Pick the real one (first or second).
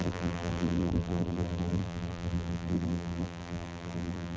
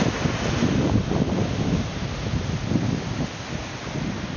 second